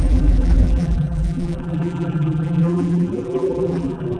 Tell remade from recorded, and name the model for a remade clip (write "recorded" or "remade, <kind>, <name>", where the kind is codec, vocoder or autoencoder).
remade, vocoder, BigVGAN v2